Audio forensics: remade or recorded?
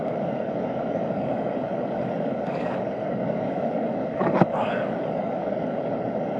remade